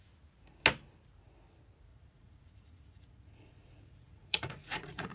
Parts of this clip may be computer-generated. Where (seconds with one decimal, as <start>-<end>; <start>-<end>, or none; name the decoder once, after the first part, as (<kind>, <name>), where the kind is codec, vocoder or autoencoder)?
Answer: 1.9-5.1 (vocoder, Vocos)